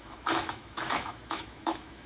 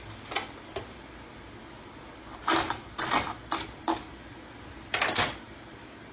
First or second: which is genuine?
second